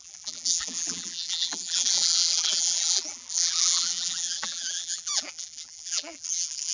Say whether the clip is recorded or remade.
remade